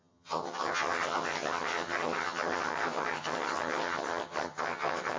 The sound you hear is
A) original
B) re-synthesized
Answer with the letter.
B